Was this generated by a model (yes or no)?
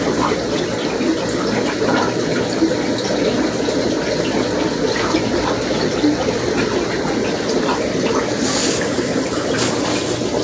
no